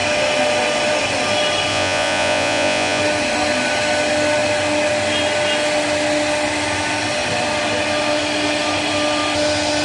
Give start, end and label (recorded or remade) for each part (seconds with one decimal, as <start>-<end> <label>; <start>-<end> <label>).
0.0-1.7 recorded; 1.7-3.0 remade; 3.0-9.8 recorded